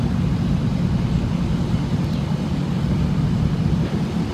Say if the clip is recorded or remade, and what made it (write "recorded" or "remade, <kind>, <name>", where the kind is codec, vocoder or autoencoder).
recorded